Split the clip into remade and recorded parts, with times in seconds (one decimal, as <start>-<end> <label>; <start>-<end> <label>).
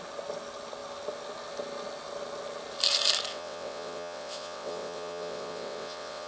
0.0-3.3 recorded; 3.3-6.3 remade